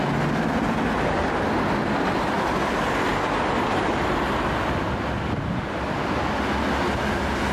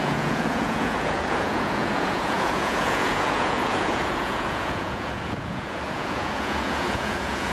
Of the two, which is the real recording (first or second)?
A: first